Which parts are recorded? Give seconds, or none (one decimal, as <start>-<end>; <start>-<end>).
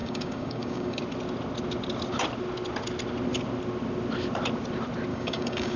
1.0-5.1